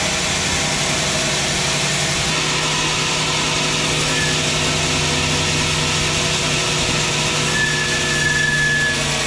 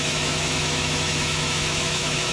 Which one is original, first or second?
first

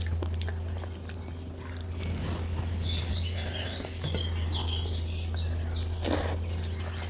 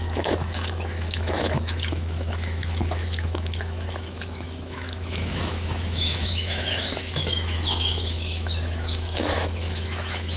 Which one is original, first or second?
first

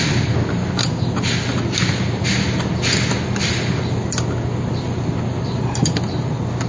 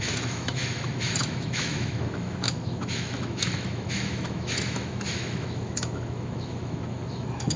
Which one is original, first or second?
first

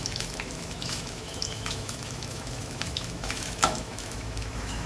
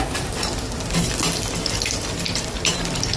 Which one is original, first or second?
second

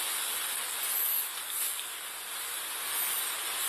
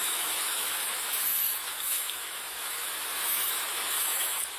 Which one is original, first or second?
first